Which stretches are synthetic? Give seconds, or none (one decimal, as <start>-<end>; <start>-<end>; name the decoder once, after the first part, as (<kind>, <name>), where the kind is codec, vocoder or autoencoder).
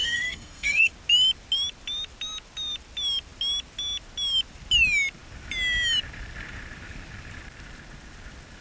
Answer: 0.0-0.9 (codec, SNAC)